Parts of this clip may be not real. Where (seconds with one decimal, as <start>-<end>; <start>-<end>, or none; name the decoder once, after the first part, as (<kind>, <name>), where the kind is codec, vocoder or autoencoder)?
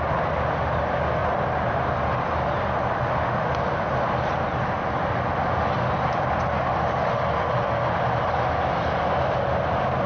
none